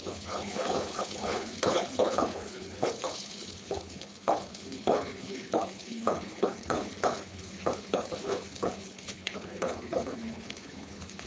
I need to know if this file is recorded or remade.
remade